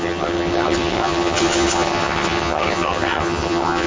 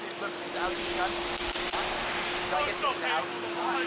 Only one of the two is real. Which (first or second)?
second